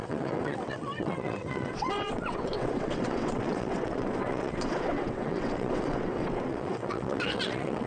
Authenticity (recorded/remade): remade